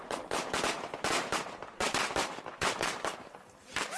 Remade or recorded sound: remade